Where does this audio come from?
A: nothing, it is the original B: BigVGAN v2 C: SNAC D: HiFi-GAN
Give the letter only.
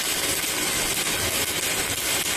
A